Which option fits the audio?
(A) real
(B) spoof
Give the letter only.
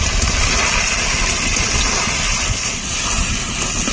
A